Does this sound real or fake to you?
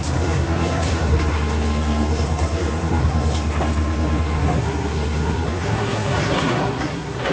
fake